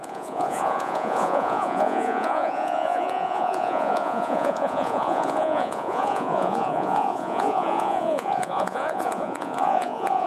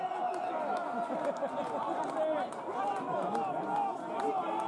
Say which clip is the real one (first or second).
second